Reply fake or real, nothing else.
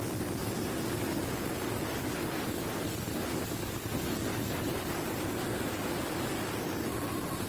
real